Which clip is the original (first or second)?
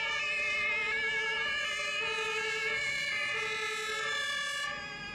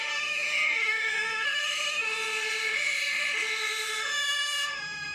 first